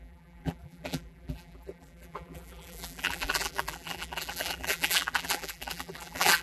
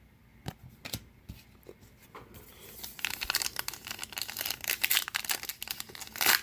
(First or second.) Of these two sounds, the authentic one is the second